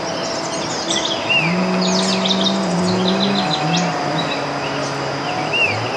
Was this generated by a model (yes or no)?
no